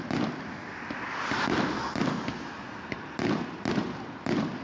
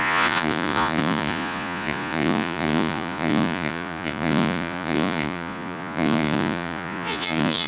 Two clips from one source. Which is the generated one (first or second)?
second